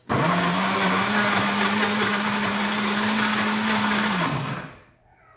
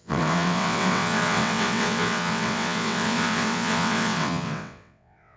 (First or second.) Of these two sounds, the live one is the first